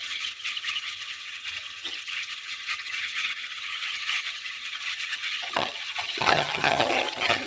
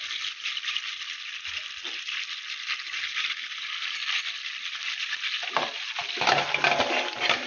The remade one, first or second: first